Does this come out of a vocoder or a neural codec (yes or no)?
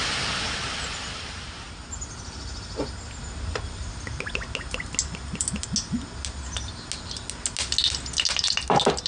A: no